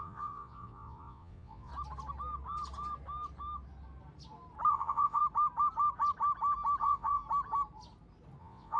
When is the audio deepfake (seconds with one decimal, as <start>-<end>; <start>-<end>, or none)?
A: 0.0-1.7; 4.7-5.2; 6.8-7.2; 8.4-8.8

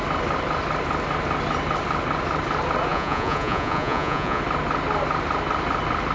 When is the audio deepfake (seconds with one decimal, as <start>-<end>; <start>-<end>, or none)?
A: 2.9-4.4

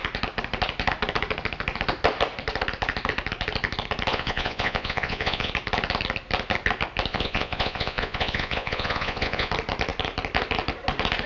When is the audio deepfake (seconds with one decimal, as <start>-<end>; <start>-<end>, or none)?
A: 4.1-5.5; 7.1-9.5